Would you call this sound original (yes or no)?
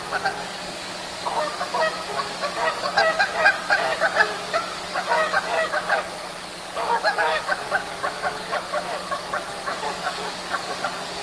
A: no